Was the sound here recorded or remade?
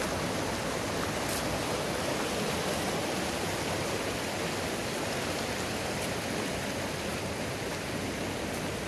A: recorded